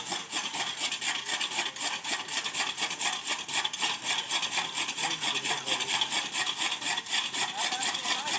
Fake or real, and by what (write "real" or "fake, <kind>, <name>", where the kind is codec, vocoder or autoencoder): real